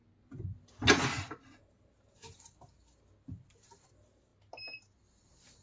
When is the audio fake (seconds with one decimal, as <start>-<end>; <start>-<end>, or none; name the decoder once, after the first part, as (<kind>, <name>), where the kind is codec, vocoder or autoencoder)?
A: none